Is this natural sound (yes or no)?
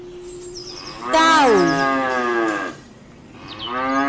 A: yes